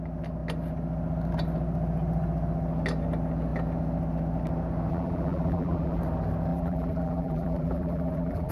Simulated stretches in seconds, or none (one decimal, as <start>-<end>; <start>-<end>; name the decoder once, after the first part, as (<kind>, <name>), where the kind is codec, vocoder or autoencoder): 4.9-6.0 (vocoder, BigVGAN v2); 6.5-8.5

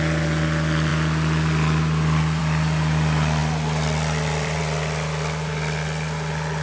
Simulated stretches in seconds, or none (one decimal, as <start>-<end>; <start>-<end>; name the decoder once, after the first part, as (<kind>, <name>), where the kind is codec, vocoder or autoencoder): 3.4-4.6 (vocoder, BigVGAN v2)

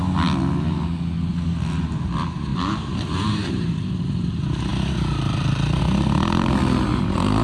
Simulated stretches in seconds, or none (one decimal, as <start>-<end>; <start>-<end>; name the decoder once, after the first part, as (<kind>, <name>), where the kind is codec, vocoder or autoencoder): 2.5-3.7 (vocoder, BigVGAN v2)

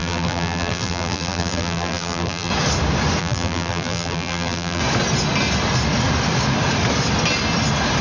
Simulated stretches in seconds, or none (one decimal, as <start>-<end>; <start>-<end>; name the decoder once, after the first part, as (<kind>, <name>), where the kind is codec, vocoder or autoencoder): 0.0-2.5 (vocoder, BigVGAN v2); 3.2-4.8

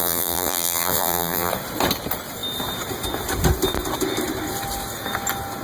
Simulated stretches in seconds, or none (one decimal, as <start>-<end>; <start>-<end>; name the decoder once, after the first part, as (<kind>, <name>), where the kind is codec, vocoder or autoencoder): 0.0-1.5 (vocoder, BigVGAN v2)

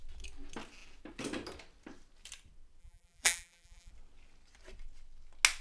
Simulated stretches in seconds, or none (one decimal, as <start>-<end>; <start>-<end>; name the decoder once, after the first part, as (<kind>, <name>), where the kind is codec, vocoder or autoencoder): 2.8-3.9 (vocoder, BigVGAN v2)

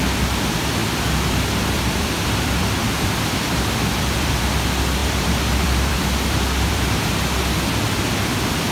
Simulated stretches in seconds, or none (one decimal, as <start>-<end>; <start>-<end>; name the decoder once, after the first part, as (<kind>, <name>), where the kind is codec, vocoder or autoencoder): 0.8-4.4 (vocoder, BigVGAN v2); 5.0-7.0